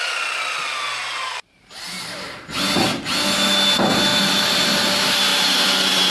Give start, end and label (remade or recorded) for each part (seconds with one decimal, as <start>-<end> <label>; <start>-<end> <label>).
0.0-1.1 recorded; 1.1-2.0 remade; 2.0-4.1 recorded; 4.1-4.6 remade; 4.6-5.3 recorded; 5.3-6.1 remade

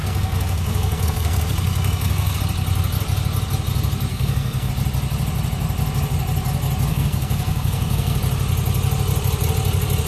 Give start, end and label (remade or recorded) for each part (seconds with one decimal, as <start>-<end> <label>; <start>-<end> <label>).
0.0-2.4 remade; 2.4-4.1 recorded; 4.1-4.7 remade; 4.7-6.9 recorded; 6.9-8.2 remade; 8.2-10.1 recorded

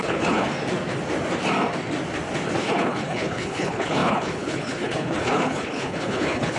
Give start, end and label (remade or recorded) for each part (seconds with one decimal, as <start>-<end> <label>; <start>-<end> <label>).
0.0-0.5 remade; 0.5-2.6 recorded; 2.6-6.6 remade

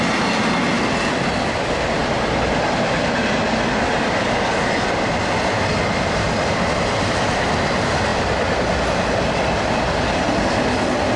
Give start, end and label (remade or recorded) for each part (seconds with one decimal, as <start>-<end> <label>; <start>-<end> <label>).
0.0-11.2 recorded

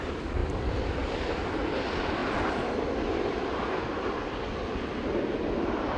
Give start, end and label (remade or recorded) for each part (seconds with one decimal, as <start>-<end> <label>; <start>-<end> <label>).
0.0-0.4 recorded; 0.4-0.9 remade; 0.9-6.0 recorded

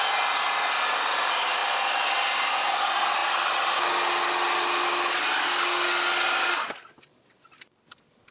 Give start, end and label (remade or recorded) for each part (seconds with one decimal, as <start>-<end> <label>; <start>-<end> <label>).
0.0-8.3 recorded

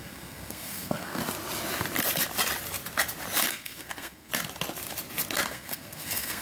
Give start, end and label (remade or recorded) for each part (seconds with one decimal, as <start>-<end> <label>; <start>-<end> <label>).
0.0-1.2 remade; 1.2-3.5 recorded; 3.5-4.3 remade; 4.3-5.5 recorded; 5.5-6.4 remade